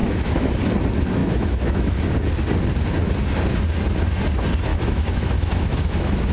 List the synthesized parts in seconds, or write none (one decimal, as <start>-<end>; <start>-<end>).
0.0-0.5; 1.2-2.1; 4.7-6.3